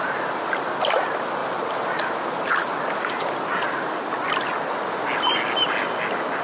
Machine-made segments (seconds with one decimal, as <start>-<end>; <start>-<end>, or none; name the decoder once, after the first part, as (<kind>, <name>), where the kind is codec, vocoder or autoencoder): none